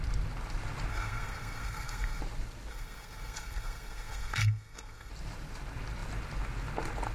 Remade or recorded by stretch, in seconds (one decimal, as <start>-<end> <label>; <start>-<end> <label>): 0.0-0.9 recorded; 0.9-2.2 remade; 2.2-2.7 recorded; 2.7-5.1 remade; 5.1-7.1 recorded